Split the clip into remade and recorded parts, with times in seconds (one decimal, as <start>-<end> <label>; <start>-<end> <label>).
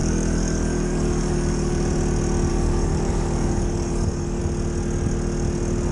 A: 0.0-1.7 remade; 1.7-2.5 recorded; 2.5-4.4 remade; 4.4-5.9 recorded